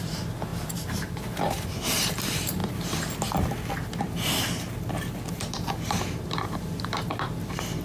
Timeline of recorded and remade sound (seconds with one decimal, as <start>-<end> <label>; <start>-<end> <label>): 0.0-2.6 remade; 2.6-5.3 recorded; 5.3-7.8 remade